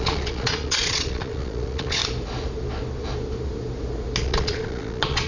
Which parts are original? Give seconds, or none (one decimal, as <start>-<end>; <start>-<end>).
2.0-4.2